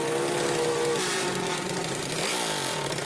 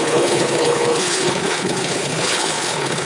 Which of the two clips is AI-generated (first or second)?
second